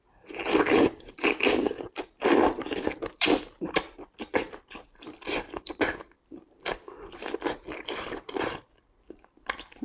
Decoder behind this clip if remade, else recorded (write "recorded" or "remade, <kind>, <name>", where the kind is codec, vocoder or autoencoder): remade, vocoder, BigVGAN v2